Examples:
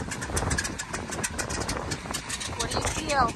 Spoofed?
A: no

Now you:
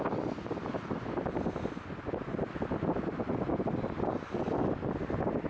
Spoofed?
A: no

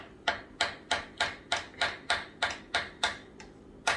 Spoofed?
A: no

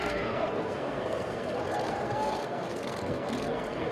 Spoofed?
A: yes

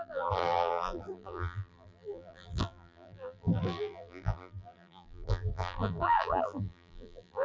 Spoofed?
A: yes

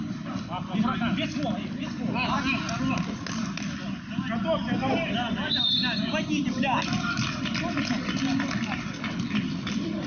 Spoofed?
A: no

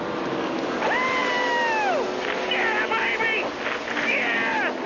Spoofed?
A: no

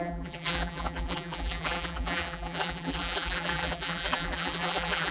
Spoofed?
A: yes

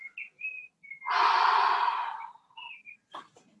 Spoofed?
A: no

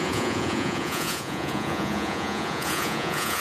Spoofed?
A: yes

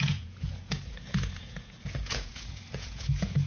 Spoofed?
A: yes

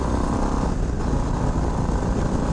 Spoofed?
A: no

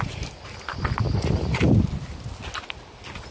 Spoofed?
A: no